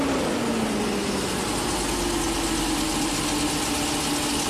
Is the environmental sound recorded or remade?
recorded